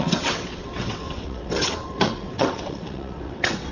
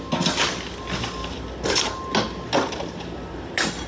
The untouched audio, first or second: second